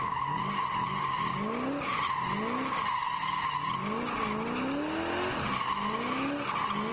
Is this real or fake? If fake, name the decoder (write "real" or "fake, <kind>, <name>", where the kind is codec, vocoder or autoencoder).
real